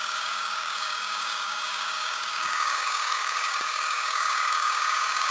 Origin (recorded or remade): remade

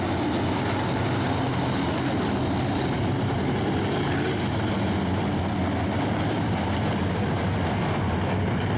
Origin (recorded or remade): recorded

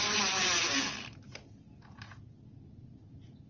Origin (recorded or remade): recorded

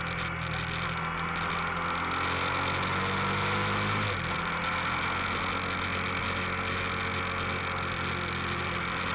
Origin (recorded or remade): recorded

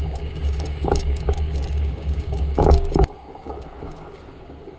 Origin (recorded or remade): remade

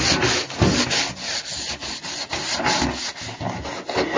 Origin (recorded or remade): recorded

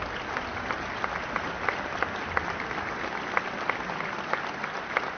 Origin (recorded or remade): recorded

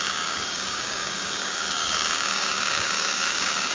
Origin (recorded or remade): remade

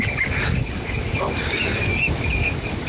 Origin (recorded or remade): remade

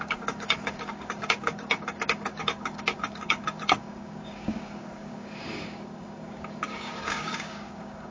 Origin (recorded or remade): remade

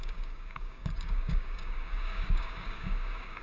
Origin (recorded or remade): remade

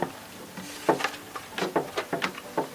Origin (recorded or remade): recorded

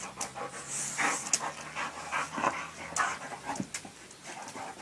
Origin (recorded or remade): recorded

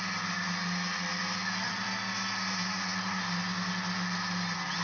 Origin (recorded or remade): recorded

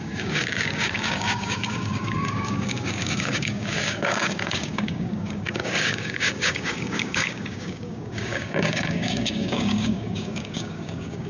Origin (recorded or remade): remade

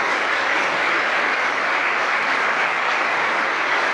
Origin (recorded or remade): remade